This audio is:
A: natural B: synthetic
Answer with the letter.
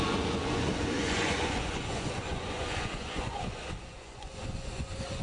B